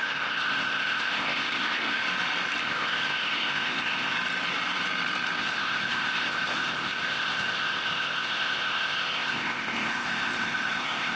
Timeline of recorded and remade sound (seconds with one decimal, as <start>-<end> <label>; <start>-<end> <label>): 0.0-2.0 remade; 2.0-2.6 recorded; 2.6-4.1 remade; 4.1-5.4 recorded; 5.4-11.2 remade